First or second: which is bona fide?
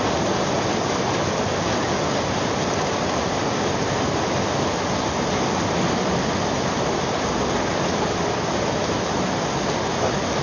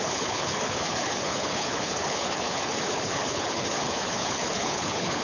first